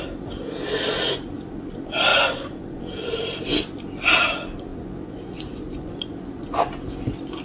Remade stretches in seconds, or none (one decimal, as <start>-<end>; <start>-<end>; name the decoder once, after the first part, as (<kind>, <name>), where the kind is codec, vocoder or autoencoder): 2.1-2.8 (vocoder, Vocos); 4.7-6.7